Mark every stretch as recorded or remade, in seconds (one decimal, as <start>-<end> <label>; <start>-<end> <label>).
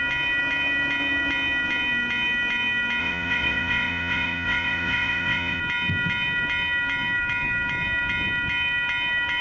0.0-3.0 recorded; 3.0-5.6 remade; 5.6-9.4 recorded